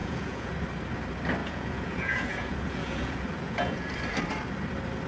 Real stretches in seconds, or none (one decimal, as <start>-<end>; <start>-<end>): 0.5-1.4; 3.9-5.1